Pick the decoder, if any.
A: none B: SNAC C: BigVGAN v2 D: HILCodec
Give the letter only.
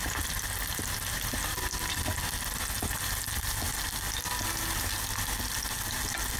A